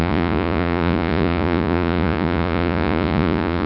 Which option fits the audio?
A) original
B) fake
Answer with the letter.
B